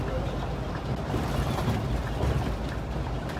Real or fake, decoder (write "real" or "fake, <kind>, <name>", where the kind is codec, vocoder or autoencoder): real